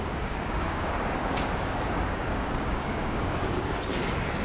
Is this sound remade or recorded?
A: remade